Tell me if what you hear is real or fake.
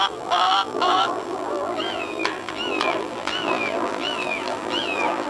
fake